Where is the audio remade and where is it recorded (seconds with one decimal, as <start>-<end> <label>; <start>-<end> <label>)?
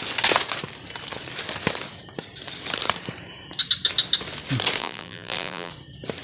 0.0-4.8 recorded; 4.8-5.7 remade; 5.7-6.2 recorded